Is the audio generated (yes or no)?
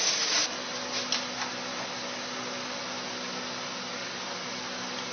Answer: no